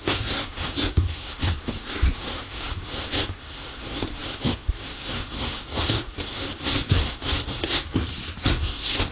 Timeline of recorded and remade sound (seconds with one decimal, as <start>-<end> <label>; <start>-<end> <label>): 0.0-8.0 remade; 8.0-8.5 recorded; 8.5-9.1 remade